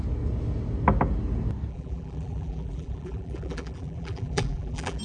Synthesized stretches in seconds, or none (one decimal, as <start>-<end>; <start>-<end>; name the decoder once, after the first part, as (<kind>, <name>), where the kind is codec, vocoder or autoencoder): 1.7-5.0 (vocoder, BigVGAN v2)